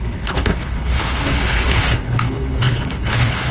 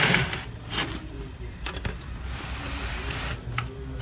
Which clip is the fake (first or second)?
first